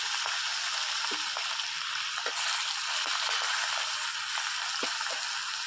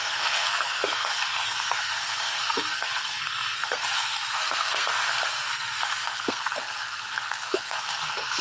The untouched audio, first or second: first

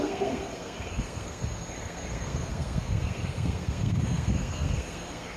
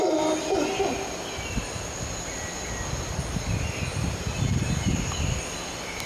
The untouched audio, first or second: second